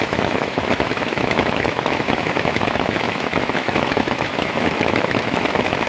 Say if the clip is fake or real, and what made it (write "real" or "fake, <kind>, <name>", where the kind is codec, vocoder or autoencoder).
fake, autoencoder, DAC-VAE